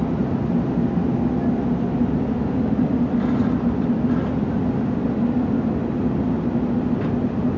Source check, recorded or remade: recorded